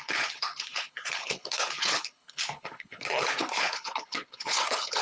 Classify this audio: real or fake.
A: fake